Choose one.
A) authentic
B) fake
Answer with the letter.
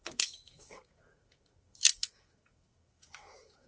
B